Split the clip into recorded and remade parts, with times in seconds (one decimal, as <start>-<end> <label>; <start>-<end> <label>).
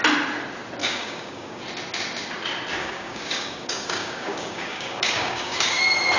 0.0-0.8 recorded; 0.8-1.6 remade; 1.6-2.8 recorded; 2.8-5.8 remade; 5.8-6.2 recorded